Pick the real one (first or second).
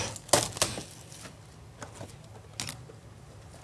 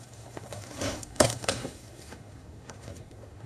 first